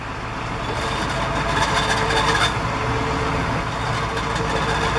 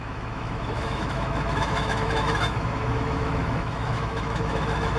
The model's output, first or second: second